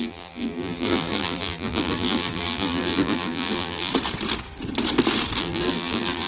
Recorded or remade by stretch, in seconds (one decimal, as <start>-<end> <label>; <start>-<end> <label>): 0.0-3.9 remade; 3.9-5.4 recorded; 5.4-6.3 remade